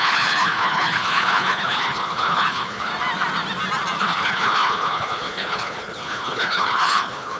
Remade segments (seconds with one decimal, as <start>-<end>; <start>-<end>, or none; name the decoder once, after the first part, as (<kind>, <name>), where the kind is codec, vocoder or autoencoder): 0.0-2.9 (codec, HILCodec); 4.0-7.4